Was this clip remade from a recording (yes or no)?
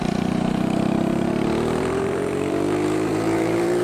yes